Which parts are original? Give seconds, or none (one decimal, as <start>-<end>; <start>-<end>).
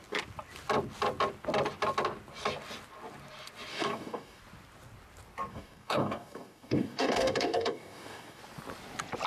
0.0-3.7; 4.4-5.5; 8.4-9.3